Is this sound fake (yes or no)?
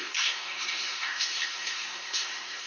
yes